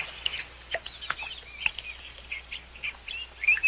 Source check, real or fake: real